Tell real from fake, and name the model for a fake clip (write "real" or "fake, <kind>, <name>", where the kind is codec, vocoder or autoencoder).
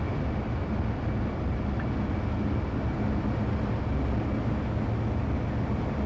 real